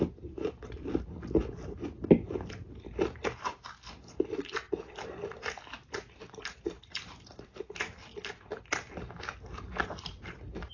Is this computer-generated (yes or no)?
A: no